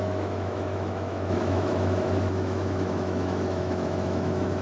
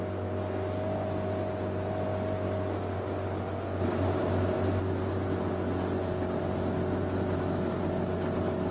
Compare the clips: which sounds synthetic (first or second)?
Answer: first